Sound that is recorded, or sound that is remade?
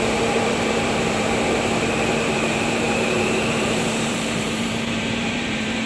remade